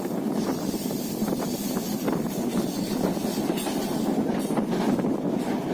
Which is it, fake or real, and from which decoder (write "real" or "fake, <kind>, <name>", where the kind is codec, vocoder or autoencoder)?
real